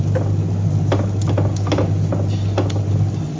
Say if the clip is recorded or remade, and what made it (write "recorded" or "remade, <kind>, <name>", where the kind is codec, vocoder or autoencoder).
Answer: recorded